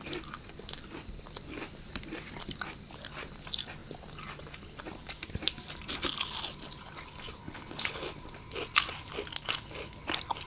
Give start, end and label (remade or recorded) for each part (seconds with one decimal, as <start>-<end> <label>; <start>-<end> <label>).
0.0-7.4 recorded; 7.4-8.0 remade; 8.0-10.5 recorded